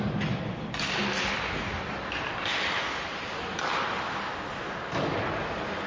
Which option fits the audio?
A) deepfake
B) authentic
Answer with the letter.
B